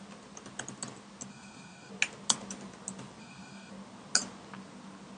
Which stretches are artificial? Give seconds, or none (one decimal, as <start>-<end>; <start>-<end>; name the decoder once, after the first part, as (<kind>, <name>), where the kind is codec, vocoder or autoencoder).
1.3-1.9 (codec, SNAC); 3.2-3.7